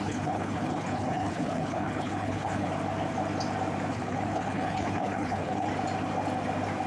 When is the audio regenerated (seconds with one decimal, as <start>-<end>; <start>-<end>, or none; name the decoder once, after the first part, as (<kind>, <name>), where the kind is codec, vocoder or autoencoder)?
0.0-2.7 (codec, HILCodec); 3.9-5.7